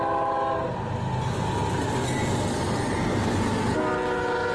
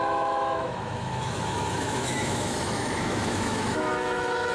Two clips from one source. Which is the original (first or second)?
first